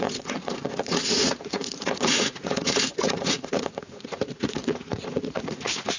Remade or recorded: remade